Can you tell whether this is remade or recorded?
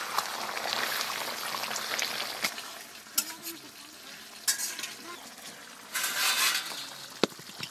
recorded